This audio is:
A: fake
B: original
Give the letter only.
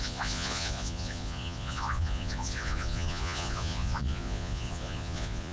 A